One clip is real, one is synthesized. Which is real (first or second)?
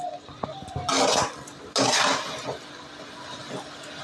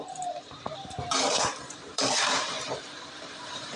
first